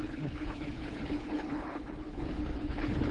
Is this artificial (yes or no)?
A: yes